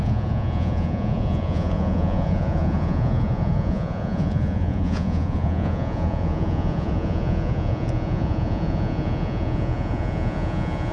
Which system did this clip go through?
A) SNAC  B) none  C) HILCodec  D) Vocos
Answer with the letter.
D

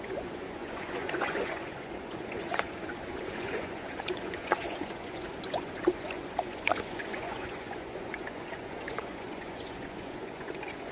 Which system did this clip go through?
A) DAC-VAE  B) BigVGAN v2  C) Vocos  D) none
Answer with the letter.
C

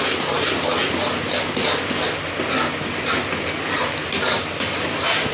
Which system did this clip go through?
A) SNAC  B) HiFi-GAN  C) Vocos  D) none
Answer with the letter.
D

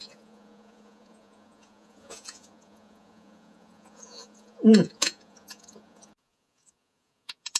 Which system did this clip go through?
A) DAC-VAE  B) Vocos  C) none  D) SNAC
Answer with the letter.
B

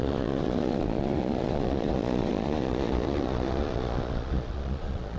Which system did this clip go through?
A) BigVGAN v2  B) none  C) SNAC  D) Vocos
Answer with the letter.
D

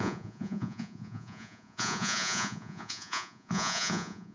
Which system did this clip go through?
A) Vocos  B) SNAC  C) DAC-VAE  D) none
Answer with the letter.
A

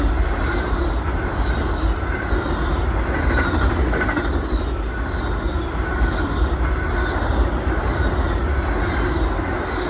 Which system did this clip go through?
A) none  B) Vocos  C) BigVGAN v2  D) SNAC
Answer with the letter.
A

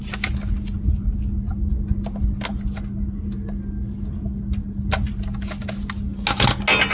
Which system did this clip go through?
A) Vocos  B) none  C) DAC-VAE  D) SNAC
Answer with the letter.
B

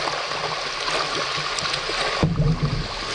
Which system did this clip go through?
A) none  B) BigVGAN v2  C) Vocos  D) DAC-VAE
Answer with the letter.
A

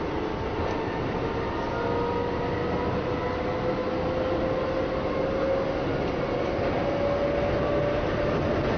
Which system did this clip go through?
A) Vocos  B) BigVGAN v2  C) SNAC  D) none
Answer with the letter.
D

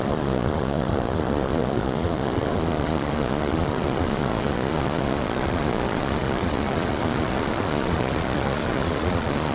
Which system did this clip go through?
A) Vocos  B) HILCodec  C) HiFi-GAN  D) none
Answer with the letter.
A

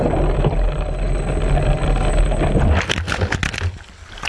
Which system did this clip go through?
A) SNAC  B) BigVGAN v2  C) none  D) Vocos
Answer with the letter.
C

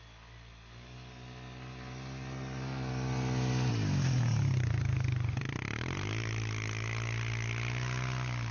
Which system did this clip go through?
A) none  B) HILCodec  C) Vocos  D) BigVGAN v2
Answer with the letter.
A